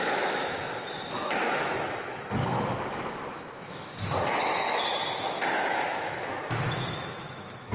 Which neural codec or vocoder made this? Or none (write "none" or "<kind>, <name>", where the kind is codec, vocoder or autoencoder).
autoencoder, DAC-VAE